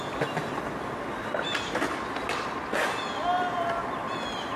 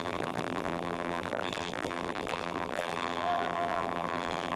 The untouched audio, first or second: first